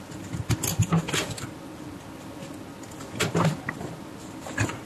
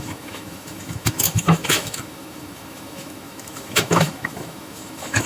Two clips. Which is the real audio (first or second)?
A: first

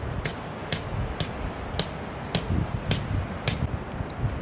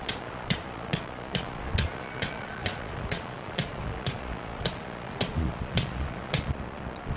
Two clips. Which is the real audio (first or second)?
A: first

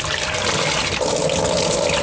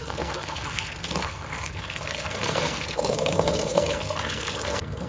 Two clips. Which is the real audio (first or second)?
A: first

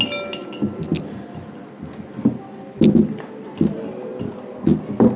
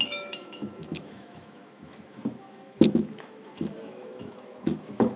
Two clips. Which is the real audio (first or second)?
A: first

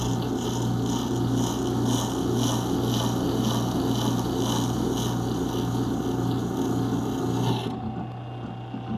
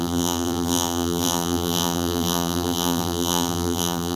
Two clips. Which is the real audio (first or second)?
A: first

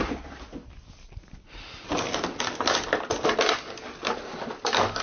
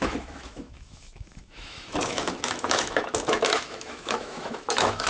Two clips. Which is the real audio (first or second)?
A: first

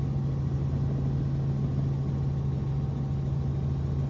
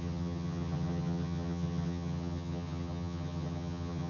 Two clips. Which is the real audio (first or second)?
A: first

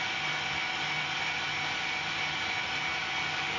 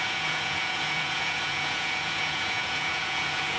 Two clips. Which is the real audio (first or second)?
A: first